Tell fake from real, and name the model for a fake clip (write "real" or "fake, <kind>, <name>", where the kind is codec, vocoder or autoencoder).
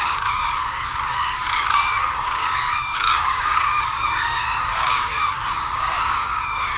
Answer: fake, codec, DAC